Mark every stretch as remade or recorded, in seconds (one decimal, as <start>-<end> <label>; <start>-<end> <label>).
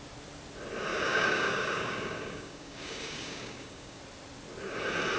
0.0-0.9 recorded; 0.9-4.0 remade; 4.0-5.2 recorded